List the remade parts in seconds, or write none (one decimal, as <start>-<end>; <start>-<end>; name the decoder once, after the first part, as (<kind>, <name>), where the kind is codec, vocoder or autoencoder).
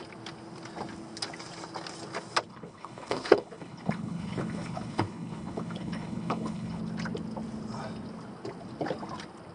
2.5-6.8 (codec, HILCodec)